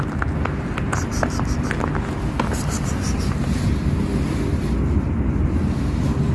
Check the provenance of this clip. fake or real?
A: real